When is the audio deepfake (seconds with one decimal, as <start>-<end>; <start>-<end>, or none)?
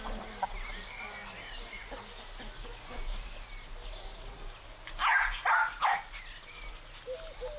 none